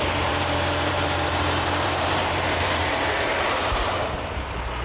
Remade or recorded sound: remade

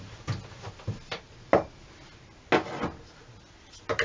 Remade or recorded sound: recorded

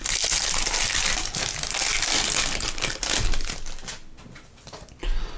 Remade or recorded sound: recorded